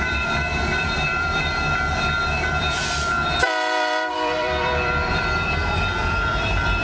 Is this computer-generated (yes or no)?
yes